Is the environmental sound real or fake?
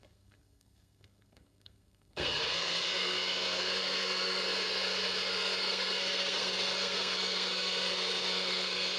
fake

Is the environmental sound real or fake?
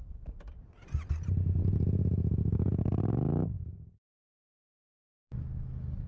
real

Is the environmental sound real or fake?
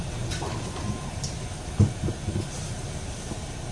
real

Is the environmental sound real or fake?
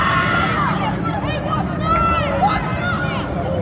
real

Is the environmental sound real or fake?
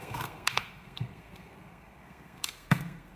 fake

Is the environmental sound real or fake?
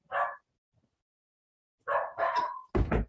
real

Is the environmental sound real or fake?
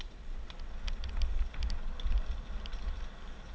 real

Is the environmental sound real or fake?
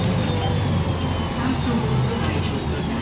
real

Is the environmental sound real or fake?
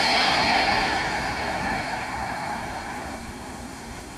fake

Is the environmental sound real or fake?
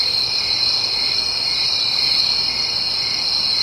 real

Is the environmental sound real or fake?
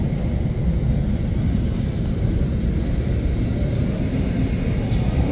real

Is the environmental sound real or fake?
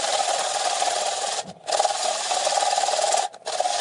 real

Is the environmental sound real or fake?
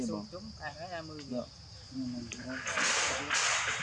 real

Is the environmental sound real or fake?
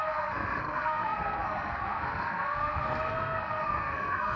fake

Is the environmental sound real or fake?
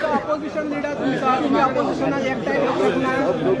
real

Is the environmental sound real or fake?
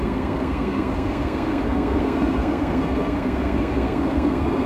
fake